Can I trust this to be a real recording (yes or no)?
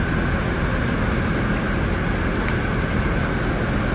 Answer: yes